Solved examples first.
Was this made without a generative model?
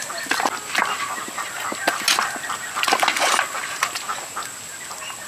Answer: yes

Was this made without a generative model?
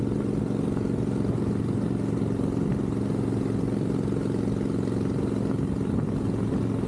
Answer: yes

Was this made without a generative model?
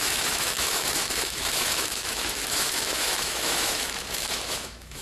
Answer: no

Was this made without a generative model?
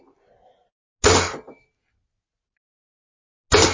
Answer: yes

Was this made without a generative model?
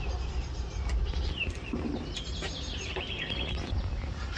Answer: yes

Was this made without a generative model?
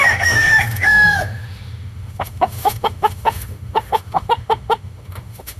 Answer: no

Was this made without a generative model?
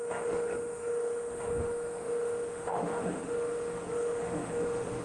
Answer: no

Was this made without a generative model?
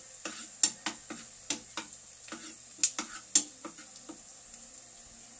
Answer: yes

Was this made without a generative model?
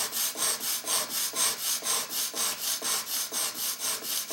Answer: yes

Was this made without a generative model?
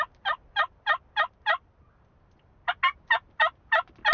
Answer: yes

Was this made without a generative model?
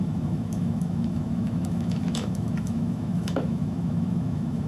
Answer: no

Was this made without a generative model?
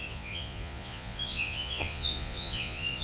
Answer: no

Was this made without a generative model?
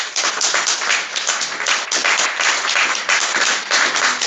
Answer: yes